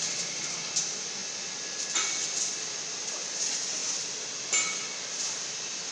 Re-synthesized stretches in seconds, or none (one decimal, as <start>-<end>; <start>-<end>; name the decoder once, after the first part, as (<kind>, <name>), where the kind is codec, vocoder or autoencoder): none